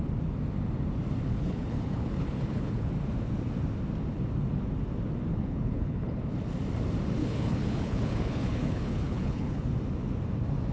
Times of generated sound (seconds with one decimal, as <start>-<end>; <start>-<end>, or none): 1.3-2.9; 5.3-6.2; 7.2-9.7